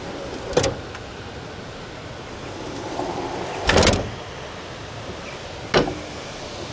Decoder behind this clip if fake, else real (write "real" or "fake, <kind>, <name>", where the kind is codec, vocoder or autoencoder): real